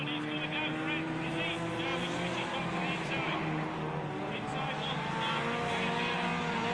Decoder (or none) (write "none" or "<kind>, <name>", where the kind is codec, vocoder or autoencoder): none